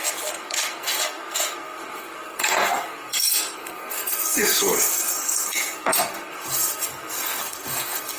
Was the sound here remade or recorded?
remade